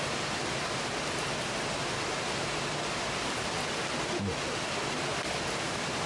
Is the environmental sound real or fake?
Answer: fake